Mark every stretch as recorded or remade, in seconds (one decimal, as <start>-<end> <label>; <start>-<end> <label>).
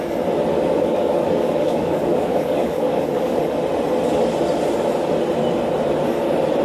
0.0-0.5 recorded; 0.5-3.4 remade; 3.4-6.6 recorded